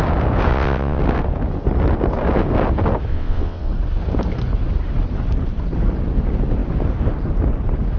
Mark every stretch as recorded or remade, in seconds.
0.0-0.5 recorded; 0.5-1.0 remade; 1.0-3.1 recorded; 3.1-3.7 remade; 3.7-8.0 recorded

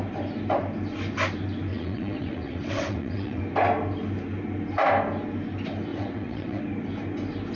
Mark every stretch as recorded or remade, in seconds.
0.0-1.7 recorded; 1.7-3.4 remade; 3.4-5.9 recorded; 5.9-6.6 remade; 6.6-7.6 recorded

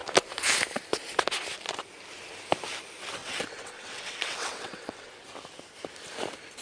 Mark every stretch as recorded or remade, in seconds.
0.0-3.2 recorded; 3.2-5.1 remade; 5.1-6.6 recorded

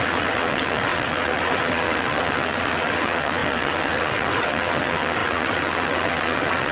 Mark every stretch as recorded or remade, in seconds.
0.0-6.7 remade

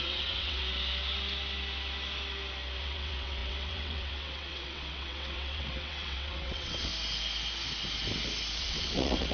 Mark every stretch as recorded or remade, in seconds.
0.0-0.6 remade; 0.6-2.8 recorded; 2.8-6.9 remade; 6.9-8.6 recorded; 8.6-9.3 remade

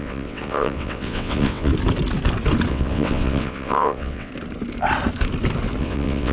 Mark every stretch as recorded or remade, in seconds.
0.0-1.7 remade; 1.7-2.7 recorded; 2.7-4.3 remade; 4.3-5.8 recorded; 5.8-6.3 remade

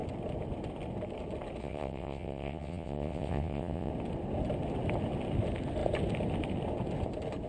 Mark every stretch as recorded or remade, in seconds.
0.0-1.6 recorded; 1.6-3.9 remade; 3.9-7.5 recorded

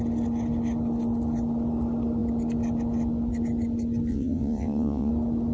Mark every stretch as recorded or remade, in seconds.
0.0-4.1 recorded; 4.1-5.1 remade; 5.1-5.5 recorded